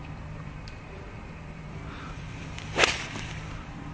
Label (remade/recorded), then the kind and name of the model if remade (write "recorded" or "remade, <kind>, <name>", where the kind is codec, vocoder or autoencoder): remade, vocoder, BigVGAN v2